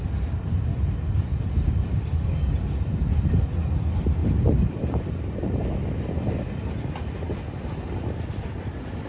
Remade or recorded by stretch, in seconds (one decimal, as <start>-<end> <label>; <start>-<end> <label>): 0.0-1.2 recorded; 1.2-2.1 remade; 2.1-4.2 recorded; 4.2-5.8 remade; 5.8-9.1 recorded